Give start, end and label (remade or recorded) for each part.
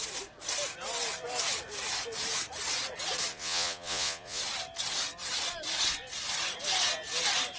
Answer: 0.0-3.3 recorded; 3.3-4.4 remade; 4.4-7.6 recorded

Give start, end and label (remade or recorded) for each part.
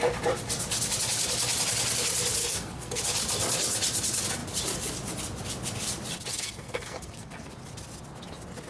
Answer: 0.0-2.4 recorded; 2.4-3.0 remade; 3.0-6.3 recorded; 6.3-7.5 remade; 7.5-8.7 recorded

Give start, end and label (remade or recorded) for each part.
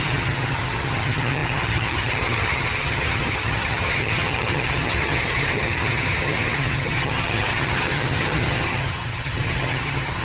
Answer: 0.0-10.2 remade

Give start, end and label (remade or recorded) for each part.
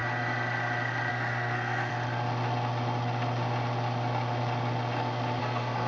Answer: 0.0-1.1 recorded; 1.1-1.9 remade; 1.9-5.4 recorded; 5.4-5.9 remade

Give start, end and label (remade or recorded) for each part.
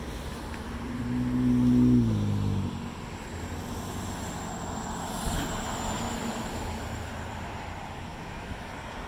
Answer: 0.0-8.1 recorded; 8.1-8.7 remade; 8.7-9.1 recorded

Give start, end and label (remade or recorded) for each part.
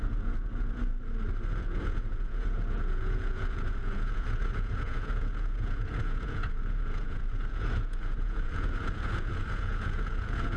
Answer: 0.0-0.9 remade; 0.9-1.5 recorded; 1.5-10.6 remade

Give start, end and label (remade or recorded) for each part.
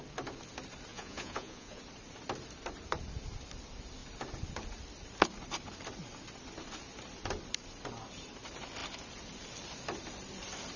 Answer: 0.0-0.9 recorded; 0.9-1.8 remade; 1.8-10.8 recorded